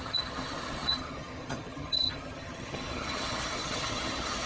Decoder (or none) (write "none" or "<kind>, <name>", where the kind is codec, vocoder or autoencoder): vocoder, HiFi-GAN